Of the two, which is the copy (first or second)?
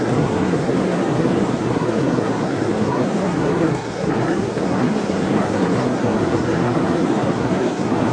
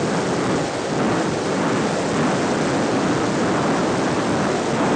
first